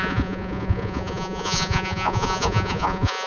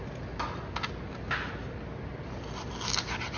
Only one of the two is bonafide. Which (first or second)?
second